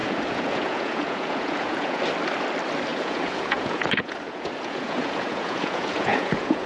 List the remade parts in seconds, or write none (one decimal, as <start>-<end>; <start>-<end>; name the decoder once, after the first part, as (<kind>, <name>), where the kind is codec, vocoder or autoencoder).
0.0-2.0 (vocoder, Vocos); 2.9-6.7